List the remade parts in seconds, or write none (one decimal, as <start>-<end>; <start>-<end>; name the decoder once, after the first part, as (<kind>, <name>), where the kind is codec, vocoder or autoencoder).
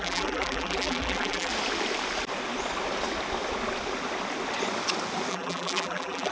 0.0-1.5 (vocoder, BigVGAN v2); 5.3-6.3